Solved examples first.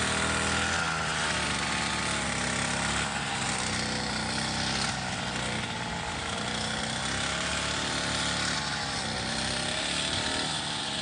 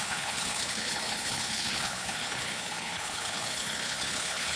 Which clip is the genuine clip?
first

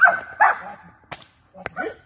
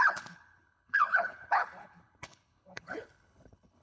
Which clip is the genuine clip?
first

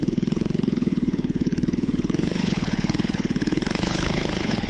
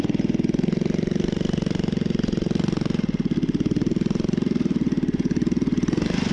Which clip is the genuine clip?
second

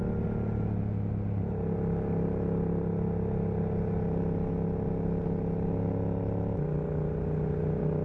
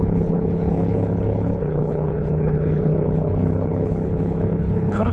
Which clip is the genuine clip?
first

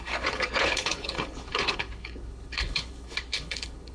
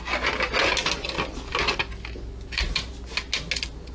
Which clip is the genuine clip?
second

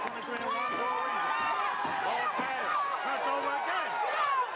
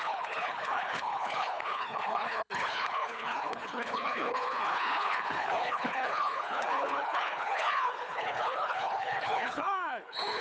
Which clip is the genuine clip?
first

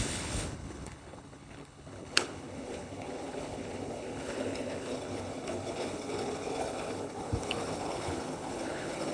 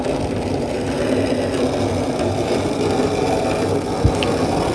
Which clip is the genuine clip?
second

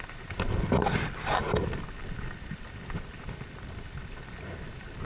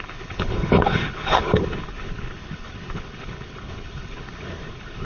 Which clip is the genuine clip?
first